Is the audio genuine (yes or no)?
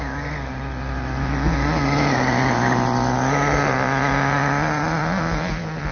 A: yes